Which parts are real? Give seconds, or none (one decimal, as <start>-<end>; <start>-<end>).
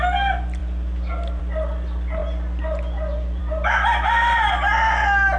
0.0-5.4